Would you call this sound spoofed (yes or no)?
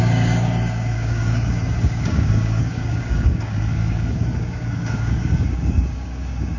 yes